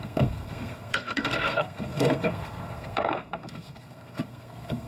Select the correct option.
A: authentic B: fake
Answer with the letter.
B